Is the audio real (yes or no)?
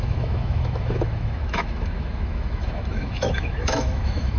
no